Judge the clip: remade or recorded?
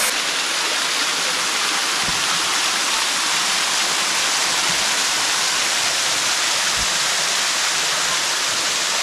recorded